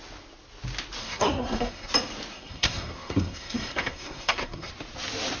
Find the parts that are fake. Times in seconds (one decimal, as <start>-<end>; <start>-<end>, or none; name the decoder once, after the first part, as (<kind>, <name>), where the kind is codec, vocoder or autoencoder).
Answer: 1.0-1.9 (codec, SNAC); 2.3-4.7

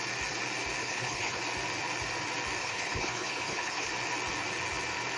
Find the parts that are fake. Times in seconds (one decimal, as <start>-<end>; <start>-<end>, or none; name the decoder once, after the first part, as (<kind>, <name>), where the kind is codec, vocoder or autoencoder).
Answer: 0.8-1.4 (codec, HILCodec); 2.6-3.9

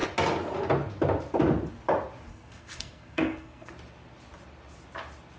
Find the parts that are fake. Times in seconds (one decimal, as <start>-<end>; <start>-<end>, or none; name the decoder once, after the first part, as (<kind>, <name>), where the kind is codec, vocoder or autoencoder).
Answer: 2.3-3.7 (codec, SNAC)

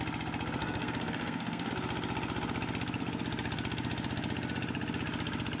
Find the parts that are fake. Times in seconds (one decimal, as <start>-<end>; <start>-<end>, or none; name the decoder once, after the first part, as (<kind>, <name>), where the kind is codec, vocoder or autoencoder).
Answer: 0.6-1.7 (codec, SNAC)